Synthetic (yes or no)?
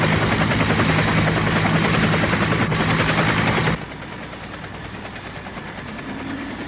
no